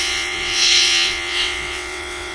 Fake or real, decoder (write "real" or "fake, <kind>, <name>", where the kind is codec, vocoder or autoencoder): fake, vocoder, WaveNeXt